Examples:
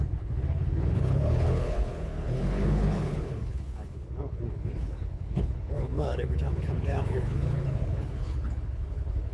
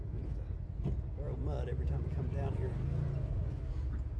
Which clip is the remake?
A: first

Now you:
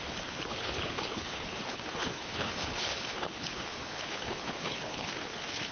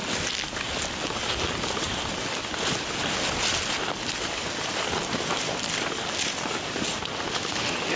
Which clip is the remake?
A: first